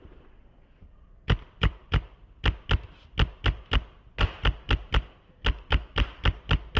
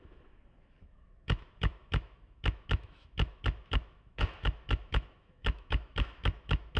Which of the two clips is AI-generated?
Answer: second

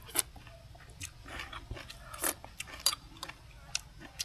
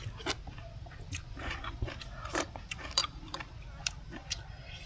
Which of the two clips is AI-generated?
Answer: second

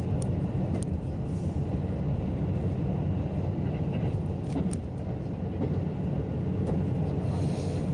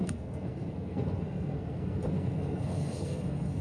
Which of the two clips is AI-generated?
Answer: second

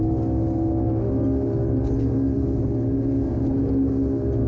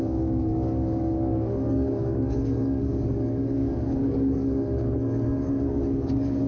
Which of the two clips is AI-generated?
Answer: second